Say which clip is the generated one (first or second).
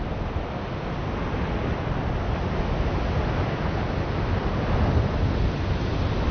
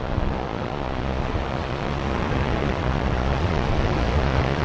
second